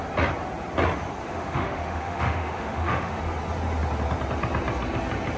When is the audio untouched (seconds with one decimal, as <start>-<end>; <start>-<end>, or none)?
0.0-1.2; 3.2-5.4